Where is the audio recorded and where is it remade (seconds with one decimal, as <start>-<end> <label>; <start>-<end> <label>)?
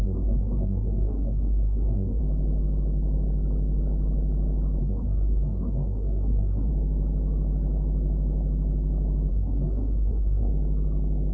0.0-2.2 remade; 2.2-4.8 recorded; 4.8-6.7 remade; 6.7-9.3 recorded; 9.3-10.5 remade; 10.5-11.3 recorded